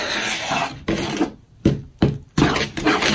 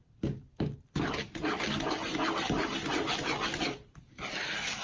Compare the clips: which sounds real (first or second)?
first